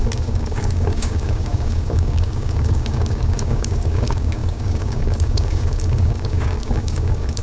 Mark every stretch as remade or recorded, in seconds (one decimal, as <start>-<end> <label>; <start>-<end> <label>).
0.0-7.4 remade